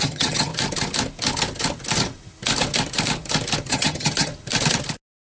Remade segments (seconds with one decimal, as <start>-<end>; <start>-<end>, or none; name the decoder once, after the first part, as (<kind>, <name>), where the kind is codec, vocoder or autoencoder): 0.0-0.5 (vocoder, HiFi-GAN); 3.7-4.3